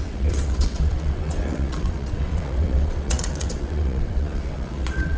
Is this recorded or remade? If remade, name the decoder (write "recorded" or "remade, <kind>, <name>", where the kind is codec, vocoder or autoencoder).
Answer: remade, vocoder, WaveNeXt